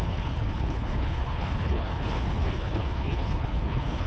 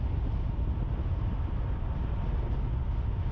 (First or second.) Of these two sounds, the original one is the second